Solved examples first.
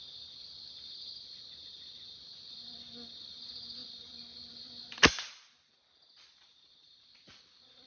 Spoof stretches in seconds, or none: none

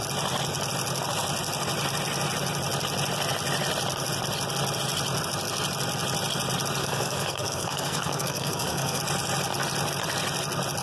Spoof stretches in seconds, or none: 6.8-9.0 (codec, SNAC)